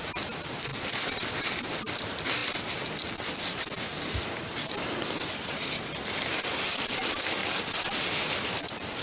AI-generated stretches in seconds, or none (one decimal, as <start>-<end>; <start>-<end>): 0.7-1.5; 3.9-6.9